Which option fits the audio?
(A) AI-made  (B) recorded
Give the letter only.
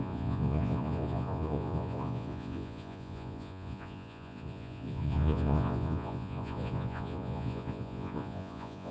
A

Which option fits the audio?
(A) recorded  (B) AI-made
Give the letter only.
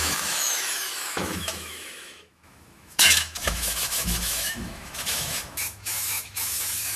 B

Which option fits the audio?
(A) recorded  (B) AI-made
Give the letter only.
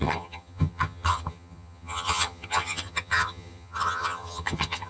B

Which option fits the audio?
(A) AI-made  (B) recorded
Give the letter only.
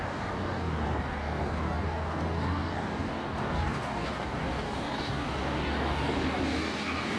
A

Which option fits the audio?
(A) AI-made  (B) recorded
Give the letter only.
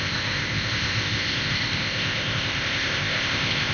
A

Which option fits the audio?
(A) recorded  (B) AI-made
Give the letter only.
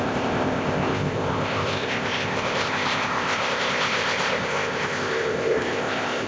B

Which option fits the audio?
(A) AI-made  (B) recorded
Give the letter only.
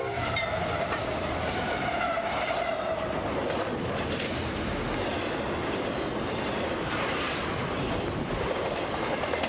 B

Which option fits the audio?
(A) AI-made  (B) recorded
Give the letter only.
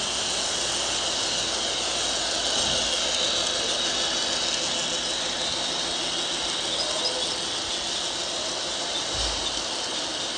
B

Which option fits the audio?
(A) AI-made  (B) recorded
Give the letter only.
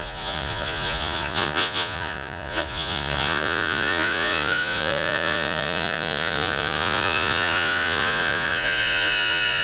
A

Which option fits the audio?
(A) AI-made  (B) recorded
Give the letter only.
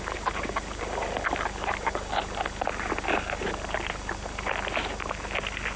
B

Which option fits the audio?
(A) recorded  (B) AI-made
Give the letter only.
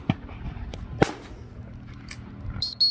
A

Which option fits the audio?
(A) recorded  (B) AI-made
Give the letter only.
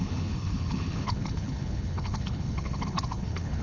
B